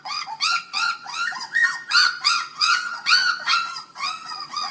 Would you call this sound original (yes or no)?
no